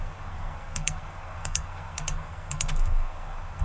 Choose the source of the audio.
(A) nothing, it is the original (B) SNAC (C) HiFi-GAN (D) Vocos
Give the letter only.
B